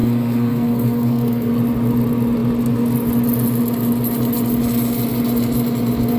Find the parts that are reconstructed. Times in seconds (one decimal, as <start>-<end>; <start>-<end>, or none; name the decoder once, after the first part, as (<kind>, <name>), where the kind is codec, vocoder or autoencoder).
0.0-1.5 (codec, SNAC)